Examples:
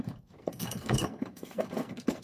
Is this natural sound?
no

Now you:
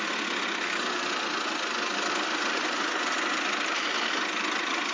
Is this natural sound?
yes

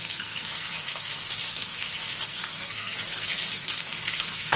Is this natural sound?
no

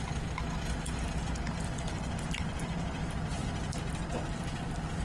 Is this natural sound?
yes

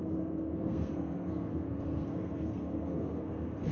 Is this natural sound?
no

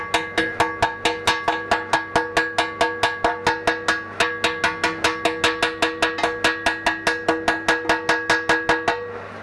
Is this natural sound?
yes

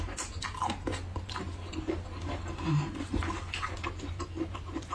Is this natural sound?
yes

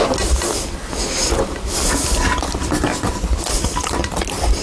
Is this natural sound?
yes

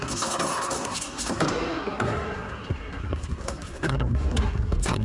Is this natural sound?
no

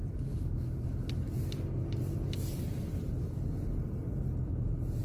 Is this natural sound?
yes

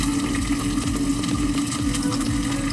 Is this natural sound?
yes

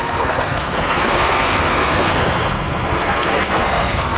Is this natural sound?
no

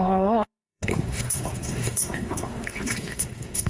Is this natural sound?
no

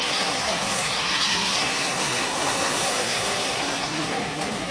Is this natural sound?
no